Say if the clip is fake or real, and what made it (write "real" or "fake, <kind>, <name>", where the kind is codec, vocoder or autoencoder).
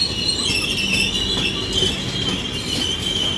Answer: real